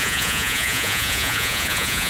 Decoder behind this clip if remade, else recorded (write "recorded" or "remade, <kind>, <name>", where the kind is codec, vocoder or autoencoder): remade, vocoder, Vocos